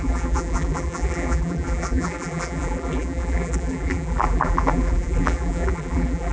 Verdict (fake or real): fake